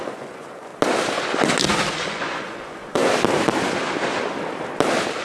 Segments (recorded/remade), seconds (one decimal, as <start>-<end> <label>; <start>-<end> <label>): 0.0-0.7 remade; 0.7-1.9 recorded; 1.9-3.0 remade; 3.0-5.2 recorded